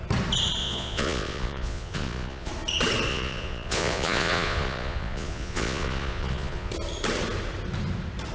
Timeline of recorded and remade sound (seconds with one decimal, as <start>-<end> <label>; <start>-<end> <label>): 0.0-0.6 recorded; 0.6-2.5 remade; 2.5-3.1 recorded; 3.1-6.7 remade; 6.7-8.3 recorded